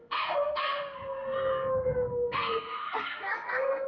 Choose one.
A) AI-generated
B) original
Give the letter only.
A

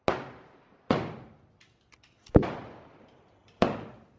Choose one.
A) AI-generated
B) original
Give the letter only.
B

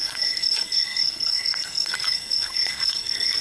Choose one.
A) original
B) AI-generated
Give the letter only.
B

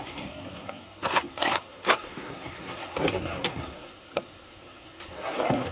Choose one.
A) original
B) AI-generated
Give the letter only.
B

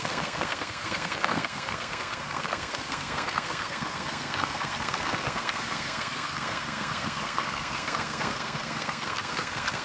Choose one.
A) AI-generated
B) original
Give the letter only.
A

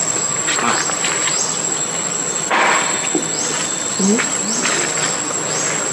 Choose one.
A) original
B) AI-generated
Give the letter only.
A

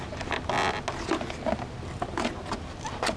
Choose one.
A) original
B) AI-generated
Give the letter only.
A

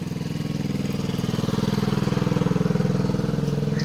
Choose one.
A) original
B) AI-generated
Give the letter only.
A